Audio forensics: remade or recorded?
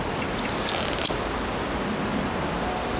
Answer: recorded